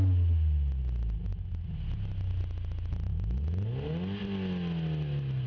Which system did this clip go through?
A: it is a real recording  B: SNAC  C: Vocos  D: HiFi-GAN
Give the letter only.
A